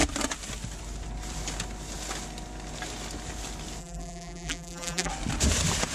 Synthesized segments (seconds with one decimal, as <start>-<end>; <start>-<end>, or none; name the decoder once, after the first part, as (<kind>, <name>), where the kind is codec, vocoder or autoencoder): 3.8-5.1 (vocoder, BigVGAN v2)